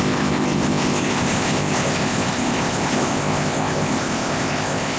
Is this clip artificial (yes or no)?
yes